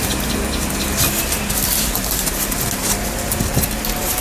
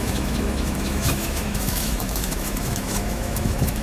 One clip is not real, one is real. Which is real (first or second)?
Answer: first